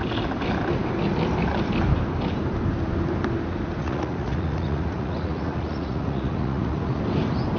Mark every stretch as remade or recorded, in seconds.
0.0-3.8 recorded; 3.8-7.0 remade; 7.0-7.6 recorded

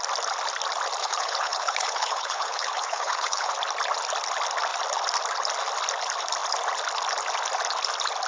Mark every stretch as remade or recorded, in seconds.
0.0-1.0 recorded; 1.0-3.5 remade; 3.5-8.3 recorded

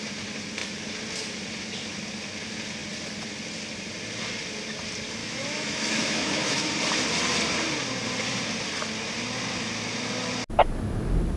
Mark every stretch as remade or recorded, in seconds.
0.0-5.2 recorded; 5.2-6.6 remade; 6.6-11.4 recorded

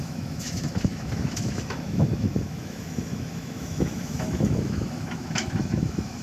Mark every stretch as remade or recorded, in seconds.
0.0-6.2 remade

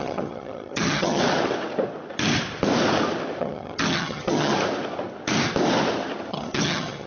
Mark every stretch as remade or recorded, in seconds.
0.0-1.2 remade; 1.2-3.4 recorded; 3.4-4.5 remade; 4.5-6.3 recorded; 6.3-7.1 remade

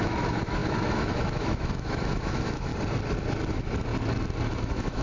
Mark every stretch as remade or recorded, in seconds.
0.0-2.7 remade; 2.7-3.5 recorded; 3.5-3.9 remade; 3.9-4.6 recorded; 4.6-5.0 remade

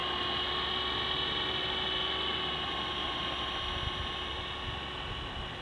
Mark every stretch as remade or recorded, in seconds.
0.0-3.0 recorded; 3.0-3.6 remade; 3.6-5.6 recorded

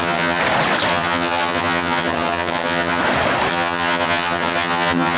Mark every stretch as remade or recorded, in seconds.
0.0-0.4 remade; 0.4-0.9 recorded; 0.9-3.0 remade; 3.0-3.5 recorded; 3.5-5.2 remade